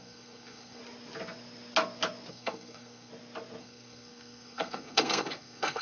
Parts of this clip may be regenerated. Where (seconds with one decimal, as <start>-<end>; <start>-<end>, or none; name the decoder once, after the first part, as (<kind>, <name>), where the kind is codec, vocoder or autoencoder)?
0.0-0.8 (codec, SNAC); 2.3-3.1; 3.6-5.8